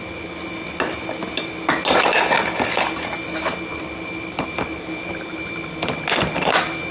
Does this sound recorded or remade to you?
recorded